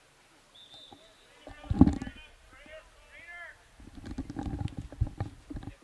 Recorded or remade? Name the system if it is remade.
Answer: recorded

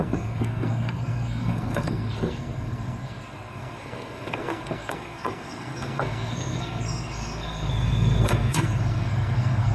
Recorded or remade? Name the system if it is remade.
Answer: remade, codec, SNAC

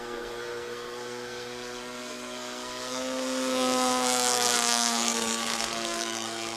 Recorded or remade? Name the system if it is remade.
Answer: remade, codec, SNAC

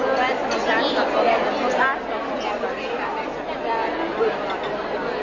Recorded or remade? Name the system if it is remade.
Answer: recorded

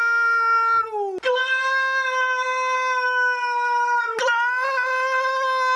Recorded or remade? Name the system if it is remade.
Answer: recorded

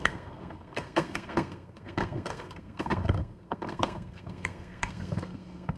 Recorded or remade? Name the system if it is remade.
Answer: remade, codec, SNAC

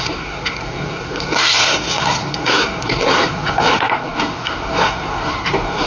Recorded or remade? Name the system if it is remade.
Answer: remade, codec, SNAC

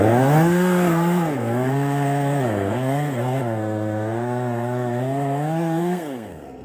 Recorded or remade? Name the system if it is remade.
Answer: remade, codec, SNAC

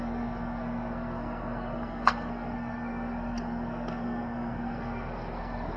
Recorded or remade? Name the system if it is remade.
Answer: remade, codec, SNAC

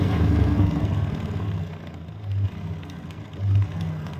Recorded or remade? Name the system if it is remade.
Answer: remade, codec, SNAC